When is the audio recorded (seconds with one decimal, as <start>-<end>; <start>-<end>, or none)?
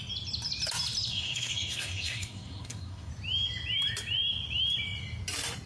0.0-1.1; 3.1-5.7